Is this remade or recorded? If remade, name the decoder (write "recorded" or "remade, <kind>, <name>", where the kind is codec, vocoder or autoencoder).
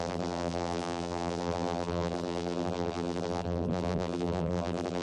remade, vocoder, BigVGAN v2